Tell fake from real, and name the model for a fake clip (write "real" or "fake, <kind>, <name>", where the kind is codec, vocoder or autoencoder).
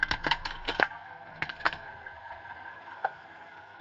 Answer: fake, codec, SNAC